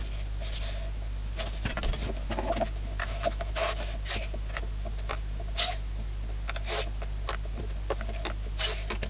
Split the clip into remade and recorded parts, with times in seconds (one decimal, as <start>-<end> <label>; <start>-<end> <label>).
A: 0.0-3.0 recorded; 3.0-3.5 remade; 3.5-9.1 recorded